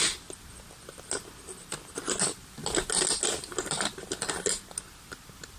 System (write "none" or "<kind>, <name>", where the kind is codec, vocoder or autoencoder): none